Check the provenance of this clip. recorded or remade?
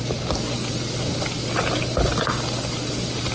recorded